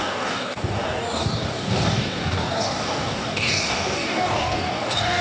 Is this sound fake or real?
fake